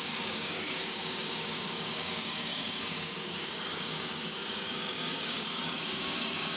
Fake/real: fake